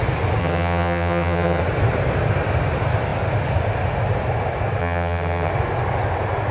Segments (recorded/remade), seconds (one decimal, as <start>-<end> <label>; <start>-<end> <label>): 0.0-0.4 recorded; 0.4-1.6 remade; 1.6-4.8 recorded; 4.8-5.5 remade; 5.5-6.5 recorded